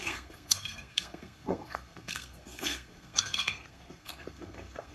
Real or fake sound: fake